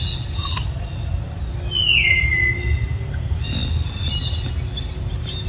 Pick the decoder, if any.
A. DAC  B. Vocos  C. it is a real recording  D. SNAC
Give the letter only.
C